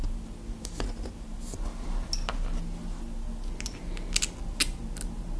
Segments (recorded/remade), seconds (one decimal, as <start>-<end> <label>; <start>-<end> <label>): 0.0-5.4 recorded